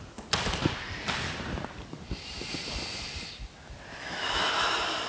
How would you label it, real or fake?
real